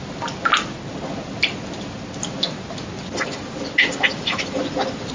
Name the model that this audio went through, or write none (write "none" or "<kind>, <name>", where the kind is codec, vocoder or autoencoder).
none